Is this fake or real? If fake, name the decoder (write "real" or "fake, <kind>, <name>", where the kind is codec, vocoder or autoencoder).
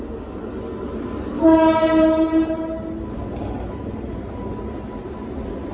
real